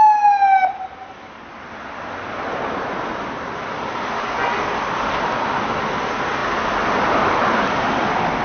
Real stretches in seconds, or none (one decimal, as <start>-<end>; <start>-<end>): 0.0-8.4